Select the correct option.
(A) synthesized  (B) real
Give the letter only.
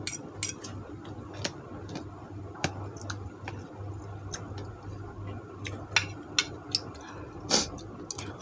B